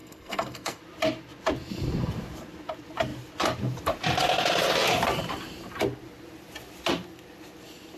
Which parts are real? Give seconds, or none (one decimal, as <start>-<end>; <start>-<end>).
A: 0.8-8.0